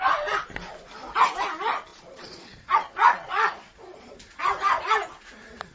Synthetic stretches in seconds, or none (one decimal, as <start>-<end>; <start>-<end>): 1.9-4.1